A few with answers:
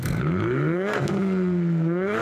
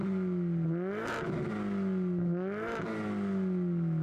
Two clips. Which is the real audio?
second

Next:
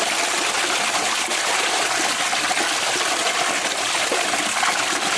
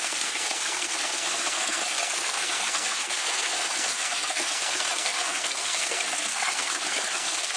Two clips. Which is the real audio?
first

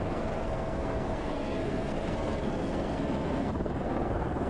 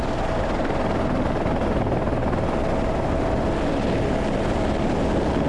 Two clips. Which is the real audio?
second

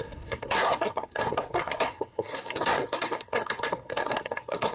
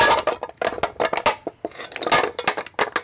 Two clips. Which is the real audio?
second